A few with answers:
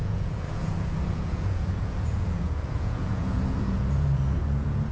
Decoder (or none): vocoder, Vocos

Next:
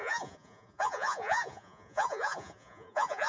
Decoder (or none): vocoder, Vocos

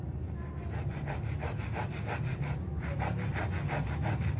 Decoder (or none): none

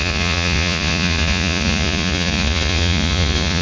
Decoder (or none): vocoder, Vocos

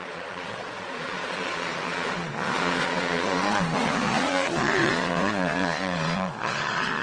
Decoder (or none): vocoder, Vocos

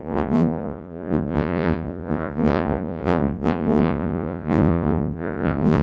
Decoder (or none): vocoder, Vocos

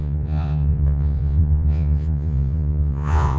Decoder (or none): vocoder, Vocos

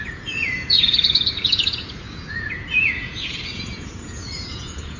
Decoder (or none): vocoder, Vocos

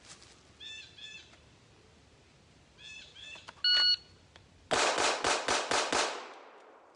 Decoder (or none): none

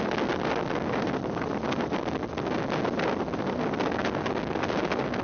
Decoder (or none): none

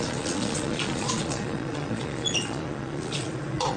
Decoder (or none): vocoder, Vocos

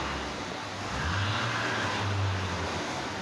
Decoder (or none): none